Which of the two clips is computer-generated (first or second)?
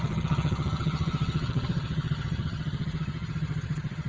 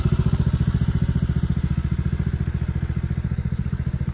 first